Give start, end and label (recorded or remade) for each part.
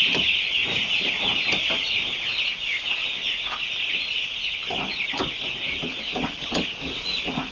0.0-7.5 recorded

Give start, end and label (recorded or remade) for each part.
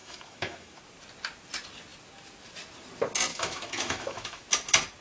0.0-0.8 remade; 0.8-3.3 recorded; 3.3-4.4 remade; 4.4-5.0 recorded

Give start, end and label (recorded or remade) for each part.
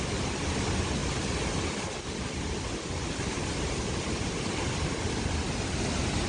0.0-6.3 recorded